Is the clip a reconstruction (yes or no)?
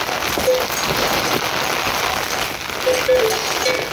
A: no